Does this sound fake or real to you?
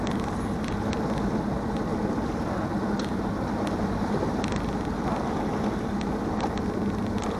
real